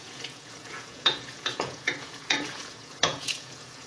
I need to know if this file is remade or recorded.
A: remade